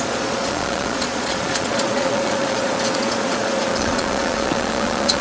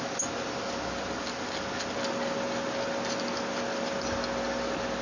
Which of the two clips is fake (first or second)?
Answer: first